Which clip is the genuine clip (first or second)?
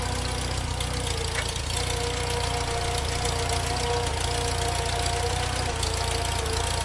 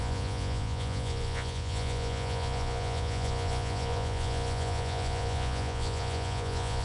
first